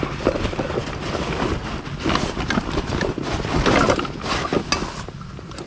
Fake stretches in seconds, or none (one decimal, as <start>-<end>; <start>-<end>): none